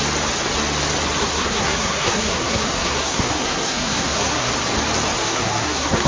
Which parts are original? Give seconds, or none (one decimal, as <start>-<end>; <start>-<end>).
0.0-1.2; 4.5-5.2

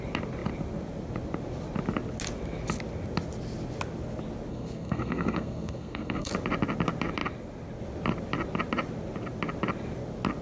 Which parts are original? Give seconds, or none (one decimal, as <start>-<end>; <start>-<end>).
0.0-4.5; 6.3-10.4

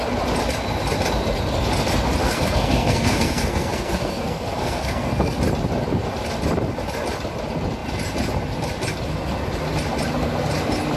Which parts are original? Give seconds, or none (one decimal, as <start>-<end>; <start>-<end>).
0.0-2.2; 5.4-11.0

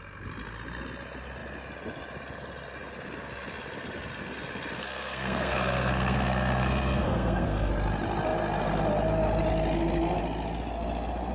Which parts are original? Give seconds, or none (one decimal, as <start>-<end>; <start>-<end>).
0.0-4.8; 7.7-11.3

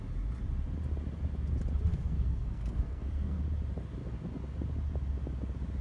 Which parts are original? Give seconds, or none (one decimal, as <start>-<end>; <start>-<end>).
0.0-1.9; 3.4-5.8